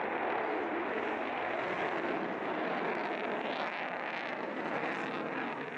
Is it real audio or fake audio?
real